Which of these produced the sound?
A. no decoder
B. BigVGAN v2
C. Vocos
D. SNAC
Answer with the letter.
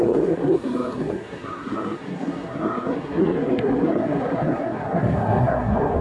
D